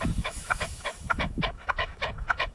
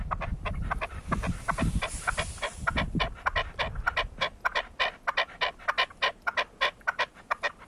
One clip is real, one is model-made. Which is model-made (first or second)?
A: first